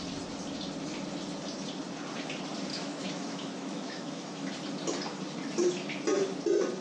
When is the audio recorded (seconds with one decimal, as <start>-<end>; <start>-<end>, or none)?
0.0-2.7; 4.5-6.8